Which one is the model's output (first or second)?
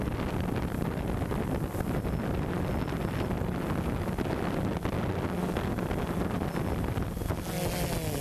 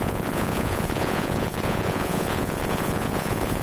second